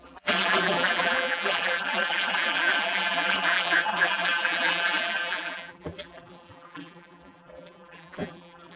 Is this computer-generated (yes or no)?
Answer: yes